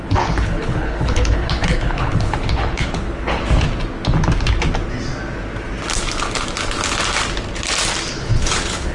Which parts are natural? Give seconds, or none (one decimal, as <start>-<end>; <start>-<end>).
3.4-8.1